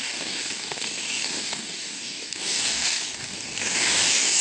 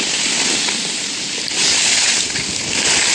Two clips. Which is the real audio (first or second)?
second